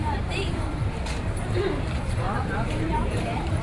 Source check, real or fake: fake